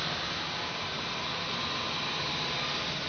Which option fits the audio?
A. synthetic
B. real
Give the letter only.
B